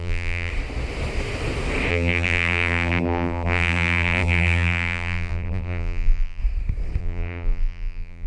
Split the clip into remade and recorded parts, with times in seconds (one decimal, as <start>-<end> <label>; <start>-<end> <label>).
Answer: 0.0-0.5 remade; 0.5-1.9 recorded; 1.9-6.4 remade; 6.4-7.0 recorded; 7.0-8.3 remade